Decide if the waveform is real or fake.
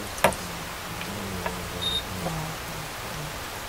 real